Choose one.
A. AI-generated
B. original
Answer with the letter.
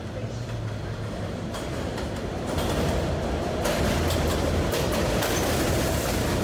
B